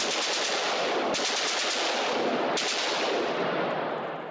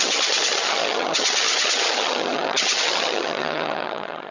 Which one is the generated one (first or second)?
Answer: second